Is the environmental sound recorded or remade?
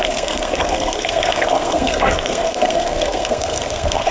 remade